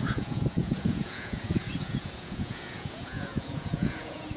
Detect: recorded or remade remade